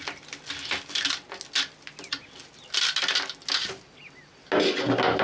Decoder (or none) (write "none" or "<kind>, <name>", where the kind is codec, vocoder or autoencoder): none